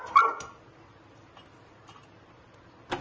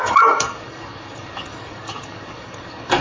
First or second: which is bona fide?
first